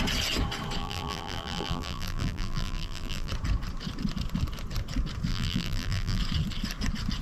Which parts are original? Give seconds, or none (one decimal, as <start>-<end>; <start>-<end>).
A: 0.0-0.8; 3.3-5.3; 6.2-7.2